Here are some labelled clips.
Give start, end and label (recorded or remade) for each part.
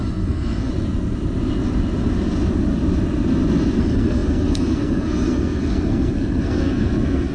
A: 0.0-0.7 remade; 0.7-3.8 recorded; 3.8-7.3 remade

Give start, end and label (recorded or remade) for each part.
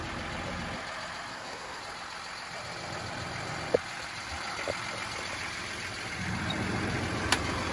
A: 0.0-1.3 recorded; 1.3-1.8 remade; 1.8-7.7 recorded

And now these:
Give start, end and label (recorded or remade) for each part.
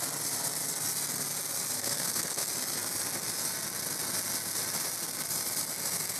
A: 0.0-1.8 recorded; 1.8-2.5 remade; 2.5-6.2 recorded